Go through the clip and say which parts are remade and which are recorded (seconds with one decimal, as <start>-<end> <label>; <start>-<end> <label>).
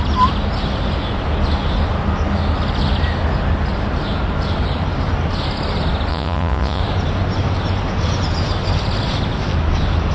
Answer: 0.0-6.1 recorded; 6.1-6.8 remade; 6.8-10.1 recorded